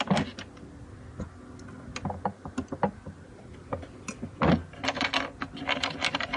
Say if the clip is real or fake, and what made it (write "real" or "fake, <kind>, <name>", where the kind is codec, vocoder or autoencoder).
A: real